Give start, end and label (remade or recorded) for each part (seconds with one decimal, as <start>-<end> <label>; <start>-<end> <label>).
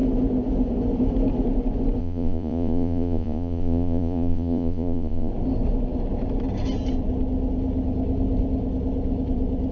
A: 0.0-2.0 recorded; 2.0-5.3 remade; 5.3-9.7 recorded